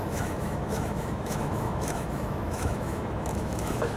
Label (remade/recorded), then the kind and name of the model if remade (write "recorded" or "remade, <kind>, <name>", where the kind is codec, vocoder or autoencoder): remade, autoencoder, DAC-VAE